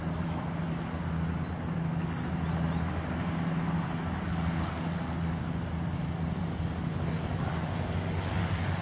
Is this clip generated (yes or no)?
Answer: no